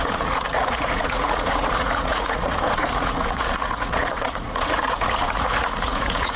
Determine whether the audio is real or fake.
fake